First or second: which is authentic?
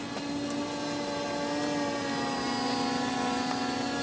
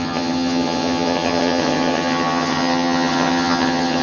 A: first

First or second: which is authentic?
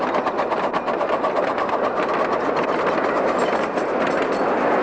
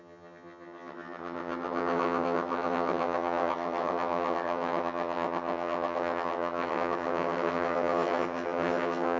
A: first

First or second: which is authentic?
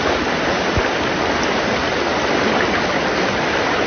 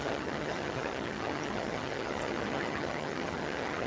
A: first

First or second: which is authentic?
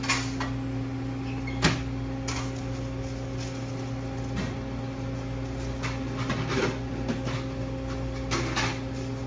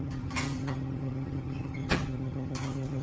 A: first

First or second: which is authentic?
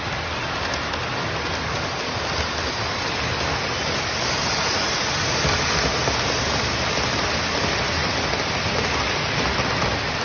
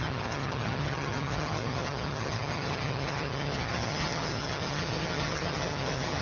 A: first